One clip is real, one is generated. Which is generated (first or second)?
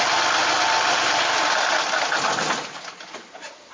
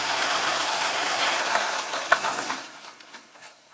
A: second